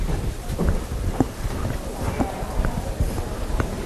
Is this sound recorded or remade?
remade